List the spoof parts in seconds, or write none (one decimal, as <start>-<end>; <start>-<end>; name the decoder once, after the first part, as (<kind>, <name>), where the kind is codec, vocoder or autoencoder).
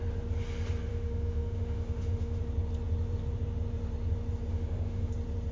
0.9-2.4 (autoencoder, DAC-VAE); 4.5-5.1